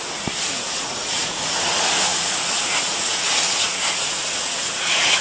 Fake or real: fake